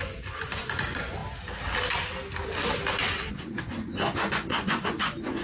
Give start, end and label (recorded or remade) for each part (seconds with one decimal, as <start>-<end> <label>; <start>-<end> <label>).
0.0-1.2 remade; 1.2-3.3 recorded; 3.3-5.4 remade

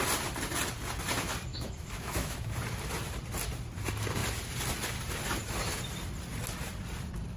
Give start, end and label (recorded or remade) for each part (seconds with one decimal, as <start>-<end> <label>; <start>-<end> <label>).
0.0-1.5 recorded; 1.5-2.5 remade; 2.5-7.4 recorded

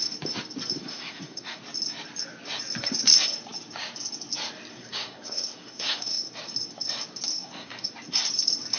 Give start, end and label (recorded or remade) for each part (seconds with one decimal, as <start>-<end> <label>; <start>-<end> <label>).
0.0-0.8 recorded; 0.8-1.6 remade; 1.6-4.7 recorded; 4.7-6.3 remade; 6.3-7.3 recorded; 7.3-7.9 remade; 7.9-8.8 recorded

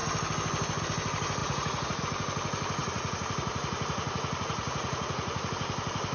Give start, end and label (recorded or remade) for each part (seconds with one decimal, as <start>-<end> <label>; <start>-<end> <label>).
0.0-1.4 recorded; 1.4-2.0 remade; 2.0-2.8 recorded; 2.8-5.5 remade; 5.5-6.1 recorded